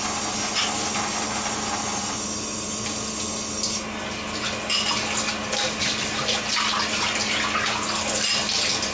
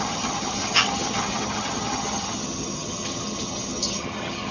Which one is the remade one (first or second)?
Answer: second